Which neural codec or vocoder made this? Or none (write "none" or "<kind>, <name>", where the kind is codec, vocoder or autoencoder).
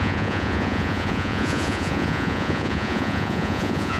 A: vocoder, Vocos